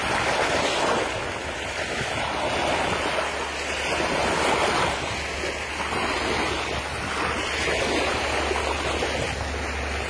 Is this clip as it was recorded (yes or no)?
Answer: yes